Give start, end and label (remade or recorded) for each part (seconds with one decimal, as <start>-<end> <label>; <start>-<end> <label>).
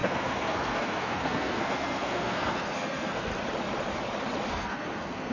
0.0-3.3 remade; 3.3-4.5 recorded; 4.5-5.3 remade